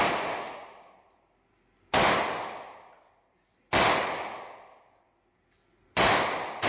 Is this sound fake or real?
real